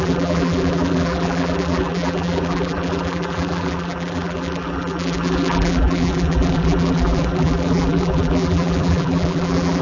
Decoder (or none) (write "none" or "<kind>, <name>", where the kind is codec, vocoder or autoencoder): vocoder, BigVGAN v2